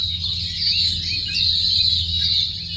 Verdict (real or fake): real